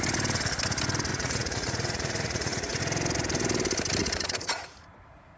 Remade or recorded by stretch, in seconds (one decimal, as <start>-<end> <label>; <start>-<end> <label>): 0.0-1.1 recorded; 1.1-2.8 remade; 2.8-4.0 recorded; 4.0-5.4 remade